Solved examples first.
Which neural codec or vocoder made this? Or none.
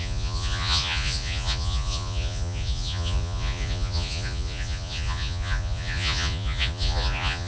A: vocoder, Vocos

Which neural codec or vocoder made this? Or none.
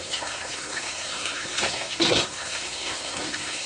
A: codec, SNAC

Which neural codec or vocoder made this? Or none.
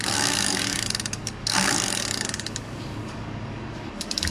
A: codec, DAC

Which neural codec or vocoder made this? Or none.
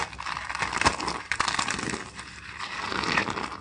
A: none